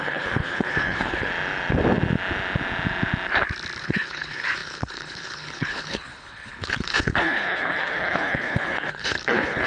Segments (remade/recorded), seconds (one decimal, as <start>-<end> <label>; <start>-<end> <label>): 0.0-1.3 remade; 1.3-3.8 recorded; 3.8-9.7 remade